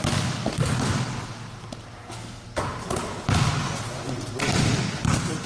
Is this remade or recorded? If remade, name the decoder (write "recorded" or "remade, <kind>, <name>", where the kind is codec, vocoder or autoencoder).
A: recorded